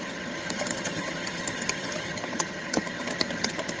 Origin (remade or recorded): remade